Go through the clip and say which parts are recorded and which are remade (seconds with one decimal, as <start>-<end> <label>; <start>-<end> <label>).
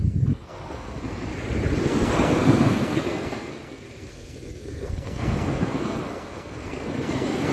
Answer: 0.0-1.3 remade; 1.3-1.8 recorded; 1.8-7.5 remade